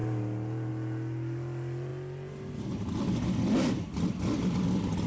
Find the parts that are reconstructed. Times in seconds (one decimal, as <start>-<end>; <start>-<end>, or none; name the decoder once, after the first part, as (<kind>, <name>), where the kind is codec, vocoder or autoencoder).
none